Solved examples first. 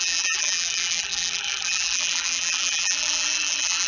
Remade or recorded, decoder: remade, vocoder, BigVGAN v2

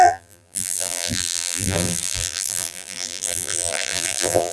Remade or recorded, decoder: remade, vocoder, BigVGAN v2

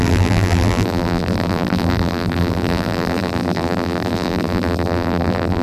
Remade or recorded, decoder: remade, vocoder, BigVGAN v2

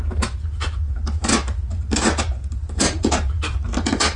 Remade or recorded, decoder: remade, vocoder, BigVGAN v2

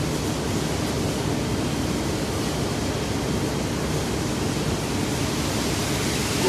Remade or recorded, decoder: recorded